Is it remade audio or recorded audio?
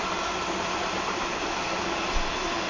recorded